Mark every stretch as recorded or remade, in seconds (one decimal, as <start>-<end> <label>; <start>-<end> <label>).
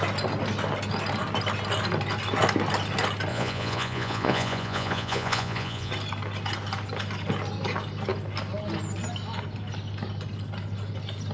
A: 0.0-3.3 recorded; 3.3-5.9 remade; 5.9-11.3 recorded